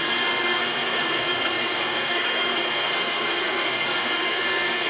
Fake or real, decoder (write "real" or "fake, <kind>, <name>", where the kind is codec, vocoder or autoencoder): fake, codec, SNAC